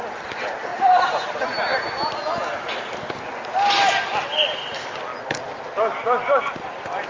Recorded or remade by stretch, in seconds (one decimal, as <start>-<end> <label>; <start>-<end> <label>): 0.0-7.1 recorded